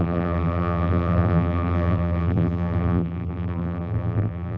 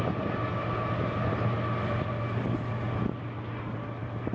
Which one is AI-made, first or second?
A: first